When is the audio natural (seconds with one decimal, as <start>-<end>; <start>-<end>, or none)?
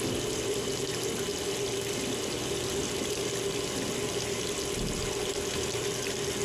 0.0-6.4